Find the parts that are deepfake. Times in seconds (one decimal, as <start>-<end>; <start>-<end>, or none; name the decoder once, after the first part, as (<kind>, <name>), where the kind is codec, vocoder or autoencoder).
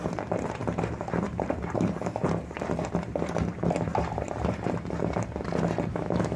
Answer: 5.9-6.4 (autoencoder, DAC-VAE)